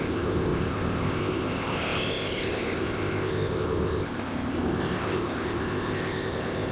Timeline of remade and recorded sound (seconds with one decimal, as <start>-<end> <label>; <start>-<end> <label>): 0.0-6.7 remade